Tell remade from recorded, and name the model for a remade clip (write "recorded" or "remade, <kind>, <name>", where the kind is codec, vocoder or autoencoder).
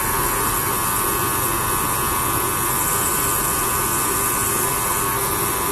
recorded